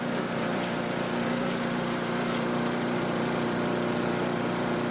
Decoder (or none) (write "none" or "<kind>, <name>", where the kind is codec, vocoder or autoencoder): vocoder, BigVGAN v2